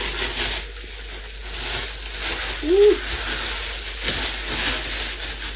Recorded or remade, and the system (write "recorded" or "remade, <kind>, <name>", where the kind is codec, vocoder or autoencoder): recorded